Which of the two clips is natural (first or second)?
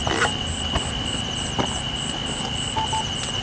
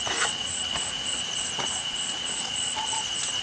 first